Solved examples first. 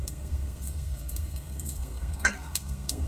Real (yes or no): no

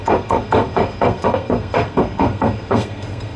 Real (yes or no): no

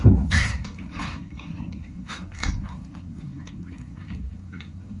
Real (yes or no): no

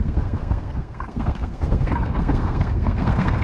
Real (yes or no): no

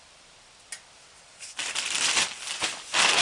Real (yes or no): yes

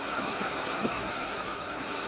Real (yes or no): no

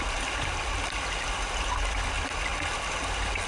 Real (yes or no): yes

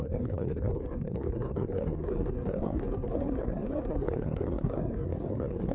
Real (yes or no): no